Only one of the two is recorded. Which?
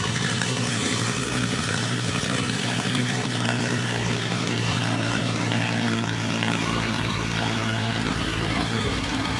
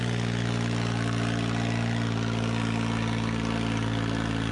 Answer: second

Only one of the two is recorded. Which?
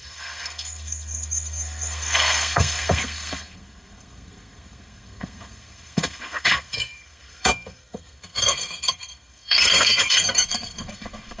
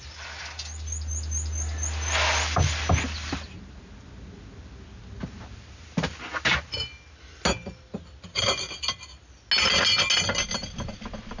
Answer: second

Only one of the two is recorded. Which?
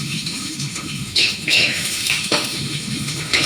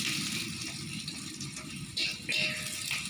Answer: second